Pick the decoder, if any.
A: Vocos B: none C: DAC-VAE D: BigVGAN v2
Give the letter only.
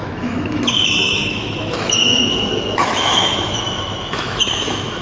C